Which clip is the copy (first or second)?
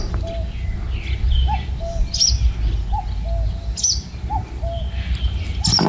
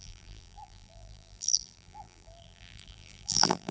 second